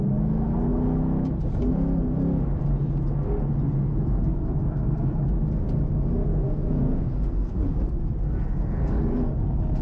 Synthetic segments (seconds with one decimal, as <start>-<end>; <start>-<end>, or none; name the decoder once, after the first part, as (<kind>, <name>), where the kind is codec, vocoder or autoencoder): 3.9-4.6 (codec, SNAC); 6.3-7.6